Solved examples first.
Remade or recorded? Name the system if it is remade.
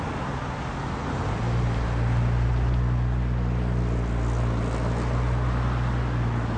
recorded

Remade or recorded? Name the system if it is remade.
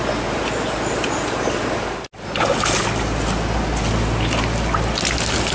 recorded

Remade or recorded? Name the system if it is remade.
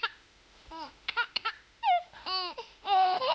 remade, autoencoder, DAC-VAE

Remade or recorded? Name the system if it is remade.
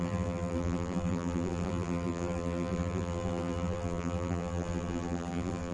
remade, vocoder, BigVGAN v2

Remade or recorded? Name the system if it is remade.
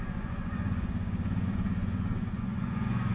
remade, vocoder, Vocos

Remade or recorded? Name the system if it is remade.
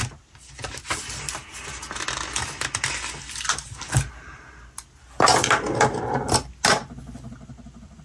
recorded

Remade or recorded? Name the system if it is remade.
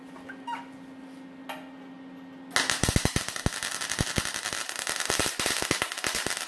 recorded